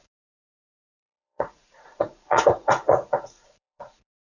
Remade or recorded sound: remade